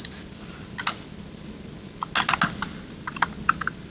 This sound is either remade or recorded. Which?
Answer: recorded